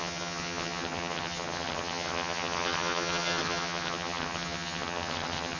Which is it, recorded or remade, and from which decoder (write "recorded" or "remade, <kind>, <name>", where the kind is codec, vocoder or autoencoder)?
remade, vocoder, HiFi-GAN